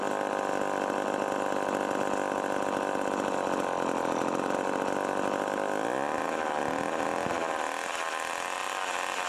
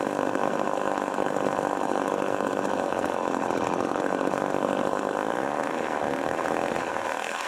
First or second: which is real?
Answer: first